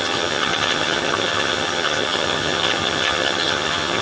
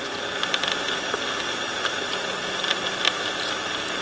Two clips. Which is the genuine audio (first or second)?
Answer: second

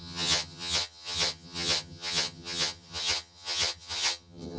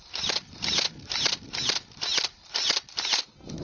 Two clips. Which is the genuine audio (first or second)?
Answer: second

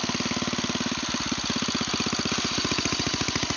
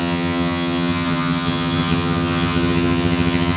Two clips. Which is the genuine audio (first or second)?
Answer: first